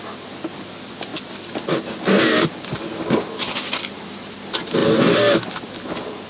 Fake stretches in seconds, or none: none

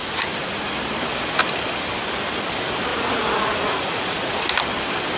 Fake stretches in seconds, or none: 2.9-4.4 (vocoder, Vocos)

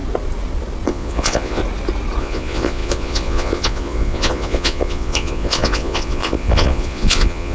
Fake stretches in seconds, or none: 0.9-1.6 (vocoder, Vocos); 2.2-7.5

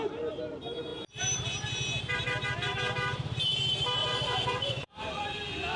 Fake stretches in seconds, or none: 4.0-5.2 (vocoder, Vocos)

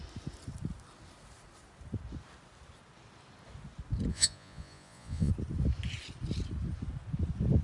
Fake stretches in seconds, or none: 4.1-5.3 (vocoder, Vocos)